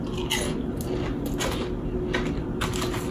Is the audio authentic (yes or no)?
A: yes